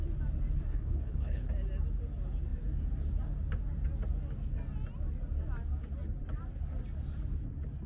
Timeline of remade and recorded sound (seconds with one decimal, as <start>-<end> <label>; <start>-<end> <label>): 0.0-0.7 recorded; 0.7-1.5 remade; 1.5-7.9 recorded